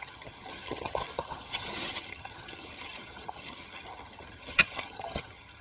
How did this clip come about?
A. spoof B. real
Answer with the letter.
A